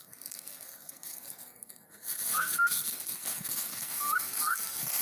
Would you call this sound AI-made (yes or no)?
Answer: yes